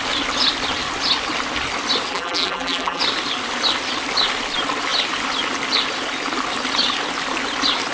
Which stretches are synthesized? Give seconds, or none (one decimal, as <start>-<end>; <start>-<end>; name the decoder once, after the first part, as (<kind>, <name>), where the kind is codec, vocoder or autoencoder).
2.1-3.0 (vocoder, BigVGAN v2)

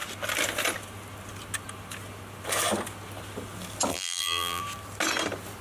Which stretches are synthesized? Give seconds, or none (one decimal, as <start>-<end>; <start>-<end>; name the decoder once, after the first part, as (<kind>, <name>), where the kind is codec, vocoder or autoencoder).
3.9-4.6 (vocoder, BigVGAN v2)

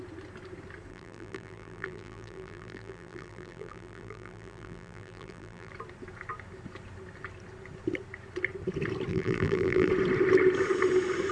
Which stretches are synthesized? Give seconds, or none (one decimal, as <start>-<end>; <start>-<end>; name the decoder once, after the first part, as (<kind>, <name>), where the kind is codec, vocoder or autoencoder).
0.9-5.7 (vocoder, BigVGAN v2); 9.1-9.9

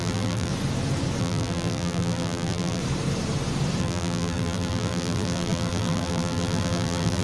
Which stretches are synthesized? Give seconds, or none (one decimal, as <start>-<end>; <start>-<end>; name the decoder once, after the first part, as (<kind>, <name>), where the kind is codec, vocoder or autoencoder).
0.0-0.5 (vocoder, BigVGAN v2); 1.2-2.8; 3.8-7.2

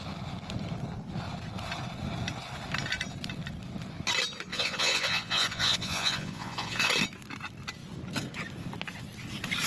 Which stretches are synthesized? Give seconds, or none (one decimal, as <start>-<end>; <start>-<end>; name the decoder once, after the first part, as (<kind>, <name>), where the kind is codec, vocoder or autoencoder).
4.5-6.9 (vocoder, Vocos)

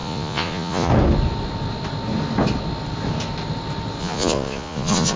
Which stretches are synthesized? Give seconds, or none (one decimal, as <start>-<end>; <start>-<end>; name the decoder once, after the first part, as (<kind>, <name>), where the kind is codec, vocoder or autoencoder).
0.0-0.9 (vocoder, Vocos); 4.0-5.2